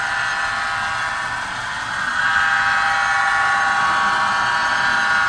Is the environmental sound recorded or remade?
recorded